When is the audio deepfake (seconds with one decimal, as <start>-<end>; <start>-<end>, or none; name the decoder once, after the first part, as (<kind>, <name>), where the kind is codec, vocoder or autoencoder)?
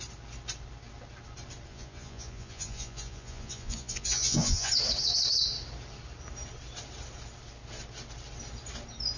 1.7-4.7 (vocoder, Vocos)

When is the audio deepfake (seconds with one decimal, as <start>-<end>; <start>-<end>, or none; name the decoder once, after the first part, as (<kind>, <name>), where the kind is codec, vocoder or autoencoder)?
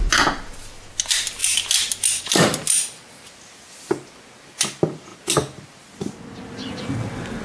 none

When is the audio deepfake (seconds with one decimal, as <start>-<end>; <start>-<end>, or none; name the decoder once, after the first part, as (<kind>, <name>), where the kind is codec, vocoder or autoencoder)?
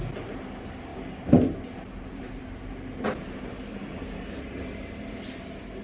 none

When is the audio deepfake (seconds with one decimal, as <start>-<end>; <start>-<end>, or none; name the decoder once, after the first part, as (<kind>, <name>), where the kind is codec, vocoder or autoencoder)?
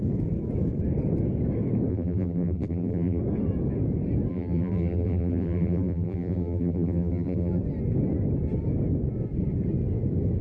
1.9-3.2 (vocoder, BigVGAN v2); 4.3-7.6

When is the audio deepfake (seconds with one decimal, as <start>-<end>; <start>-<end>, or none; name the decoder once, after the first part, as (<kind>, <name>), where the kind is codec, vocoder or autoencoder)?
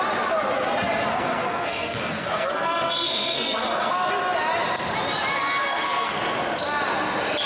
1.1-4.1 (codec, SNAC); 5.6-6.2